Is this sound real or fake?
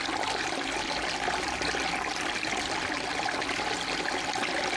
real